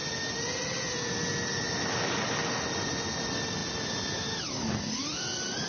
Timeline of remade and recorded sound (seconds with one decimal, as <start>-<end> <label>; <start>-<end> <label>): 0.0-5.7 recorded